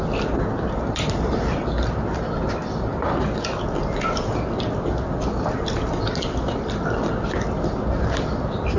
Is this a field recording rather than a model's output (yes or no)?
yes